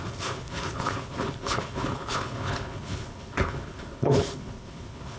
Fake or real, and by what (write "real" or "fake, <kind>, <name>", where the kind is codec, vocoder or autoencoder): fake, codec, HILCodec